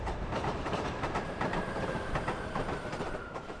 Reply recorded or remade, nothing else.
remade